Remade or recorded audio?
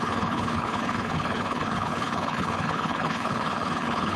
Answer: remade